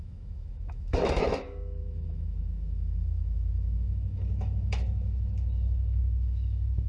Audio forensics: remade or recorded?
remade